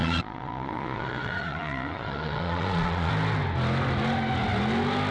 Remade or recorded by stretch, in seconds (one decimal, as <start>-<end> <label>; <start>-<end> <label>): 0.0-3.1 remade; 3.1-5.1 recorded